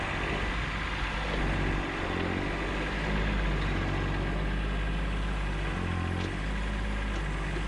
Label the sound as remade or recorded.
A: recorded